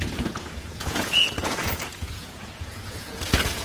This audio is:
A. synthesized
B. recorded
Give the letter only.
A